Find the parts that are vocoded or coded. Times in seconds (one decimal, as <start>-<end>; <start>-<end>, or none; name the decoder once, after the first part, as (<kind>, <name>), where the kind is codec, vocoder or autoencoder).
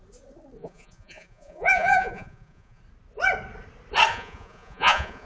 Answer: 0.6-2.8 (vocoder, Vocos); 4.1-5.3